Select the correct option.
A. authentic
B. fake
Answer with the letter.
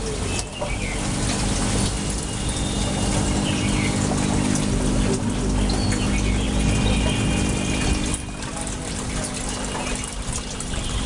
A